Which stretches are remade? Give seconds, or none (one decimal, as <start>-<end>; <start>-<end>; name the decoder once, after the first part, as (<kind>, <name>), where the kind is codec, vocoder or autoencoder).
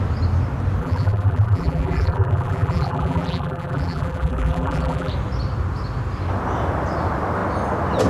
0.8-5.1 (vocoder, BigVGAN v2)